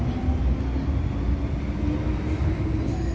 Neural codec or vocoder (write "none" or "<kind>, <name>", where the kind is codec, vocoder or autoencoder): none